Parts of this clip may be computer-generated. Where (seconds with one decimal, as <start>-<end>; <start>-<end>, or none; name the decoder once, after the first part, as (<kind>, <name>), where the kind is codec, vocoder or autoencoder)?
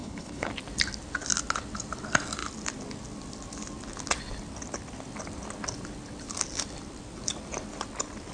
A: 0.0-0.5 (codec, HILCodec)